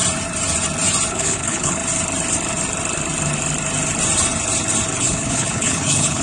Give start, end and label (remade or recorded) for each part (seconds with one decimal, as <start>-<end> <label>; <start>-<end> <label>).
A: 0.0-1.1 recorded; 1.1-1.8 remade; 1.8-5.0 recorded; 5.0-6.2 remade